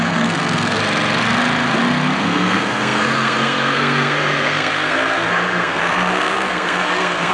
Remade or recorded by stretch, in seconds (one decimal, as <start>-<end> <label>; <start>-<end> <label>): 0.0-0.8 remade; 0.8-2.2 recorded; 2.2-7.3 remade